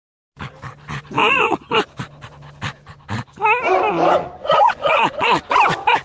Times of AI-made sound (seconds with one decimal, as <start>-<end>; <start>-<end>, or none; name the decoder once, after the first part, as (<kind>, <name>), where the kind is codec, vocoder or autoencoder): 1.2-1.8 (vocoder, Vocos); 4.4-5.5